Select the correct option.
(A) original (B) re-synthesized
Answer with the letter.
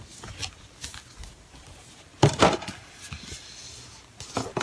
A